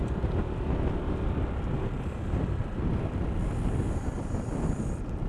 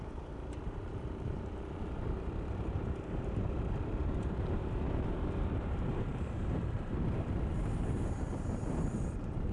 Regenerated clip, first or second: second